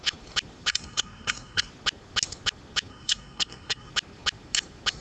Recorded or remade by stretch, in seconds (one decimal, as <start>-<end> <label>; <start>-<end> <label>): 0.0-0.7 recorded; 0.7-1.7 remade; 1.7-2.9 recorded; 2.9-3.9 remade; 3.9-5.0 recorded